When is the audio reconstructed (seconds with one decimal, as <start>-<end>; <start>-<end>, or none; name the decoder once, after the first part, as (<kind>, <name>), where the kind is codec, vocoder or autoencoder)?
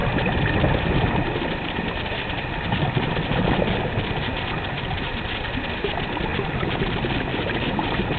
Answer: 0.0-3.4 (vocoder, BigVGAN v2); 7.3-8.2